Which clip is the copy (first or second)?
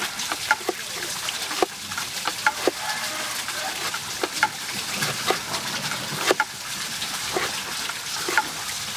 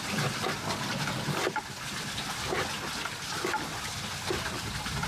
first